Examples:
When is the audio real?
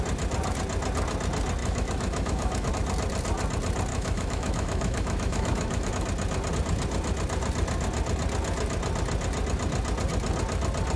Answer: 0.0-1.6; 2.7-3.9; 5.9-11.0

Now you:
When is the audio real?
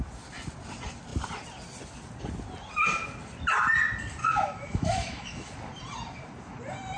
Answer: 0.0-4.2; 5.5-7.0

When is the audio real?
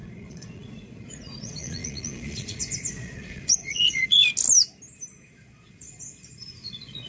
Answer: 4.2-5.1